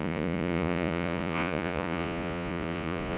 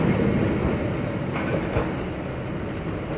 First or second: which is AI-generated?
first